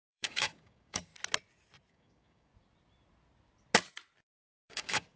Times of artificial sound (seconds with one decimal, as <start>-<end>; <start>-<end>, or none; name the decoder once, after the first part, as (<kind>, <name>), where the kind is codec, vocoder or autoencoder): 0.0-1.1 (codec, DAC); 1.9-2.5; 4.4-5.2